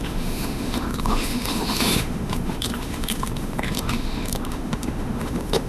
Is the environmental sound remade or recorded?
remade